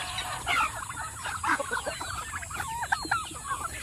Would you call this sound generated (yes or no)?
no